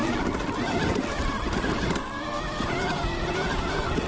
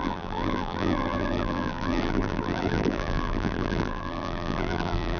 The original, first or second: first